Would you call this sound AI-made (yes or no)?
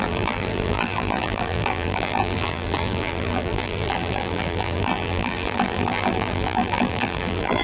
yes